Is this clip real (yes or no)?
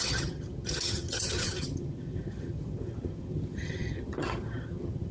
no